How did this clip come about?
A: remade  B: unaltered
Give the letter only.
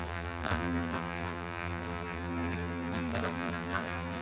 A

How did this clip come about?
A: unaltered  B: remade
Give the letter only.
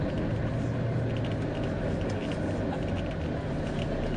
A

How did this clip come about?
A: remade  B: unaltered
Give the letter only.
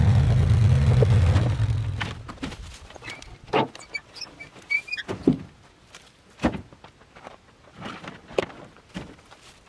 B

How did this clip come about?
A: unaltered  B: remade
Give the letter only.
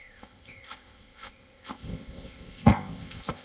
B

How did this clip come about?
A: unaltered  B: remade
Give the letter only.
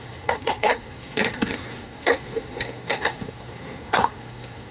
B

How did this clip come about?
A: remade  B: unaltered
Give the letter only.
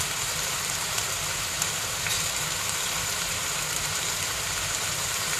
A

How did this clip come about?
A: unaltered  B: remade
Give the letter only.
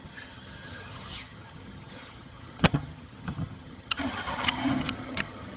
B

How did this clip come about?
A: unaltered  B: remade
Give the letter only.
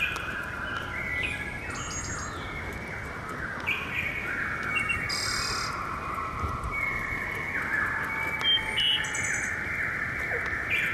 A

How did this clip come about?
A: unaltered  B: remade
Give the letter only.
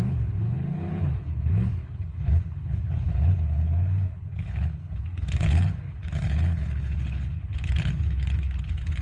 B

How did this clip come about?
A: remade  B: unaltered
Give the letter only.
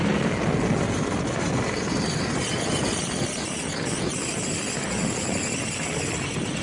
B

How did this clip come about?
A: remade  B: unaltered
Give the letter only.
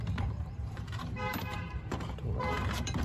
A